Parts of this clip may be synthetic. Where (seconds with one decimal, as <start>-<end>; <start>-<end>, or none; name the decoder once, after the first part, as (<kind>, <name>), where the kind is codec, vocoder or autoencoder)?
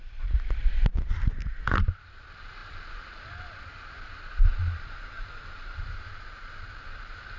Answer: none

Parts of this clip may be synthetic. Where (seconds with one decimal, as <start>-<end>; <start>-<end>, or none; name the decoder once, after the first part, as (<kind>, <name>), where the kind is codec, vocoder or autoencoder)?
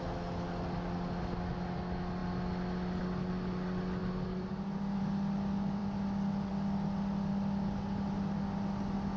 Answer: none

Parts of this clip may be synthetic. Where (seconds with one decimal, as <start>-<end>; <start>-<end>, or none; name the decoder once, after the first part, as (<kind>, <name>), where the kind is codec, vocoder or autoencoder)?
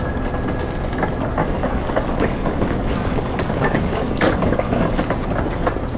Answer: 1.4-5.0 (codec, DAC)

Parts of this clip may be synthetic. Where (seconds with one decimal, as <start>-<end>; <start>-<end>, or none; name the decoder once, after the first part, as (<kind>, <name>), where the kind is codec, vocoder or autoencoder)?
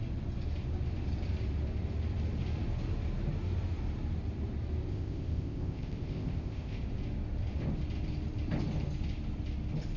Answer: 4.9-6.8 (codec, ZipCodec)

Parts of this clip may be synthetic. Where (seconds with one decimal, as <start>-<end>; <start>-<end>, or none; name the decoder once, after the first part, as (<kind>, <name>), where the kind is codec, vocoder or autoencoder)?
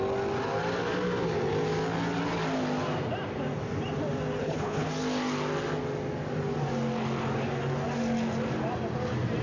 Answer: 4.4-4.9 (codec, HILCodec)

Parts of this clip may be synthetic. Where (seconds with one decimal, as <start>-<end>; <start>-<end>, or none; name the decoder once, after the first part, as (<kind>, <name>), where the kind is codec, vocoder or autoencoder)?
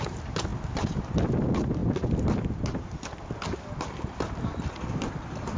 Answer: none